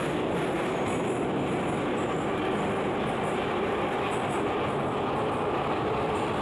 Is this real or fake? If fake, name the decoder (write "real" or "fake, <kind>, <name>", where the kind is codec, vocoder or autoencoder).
real